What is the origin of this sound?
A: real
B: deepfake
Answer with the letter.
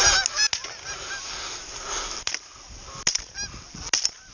A